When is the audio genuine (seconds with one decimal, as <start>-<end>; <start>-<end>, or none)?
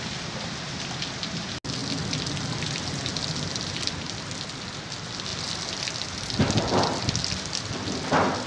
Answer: 0.0-8.5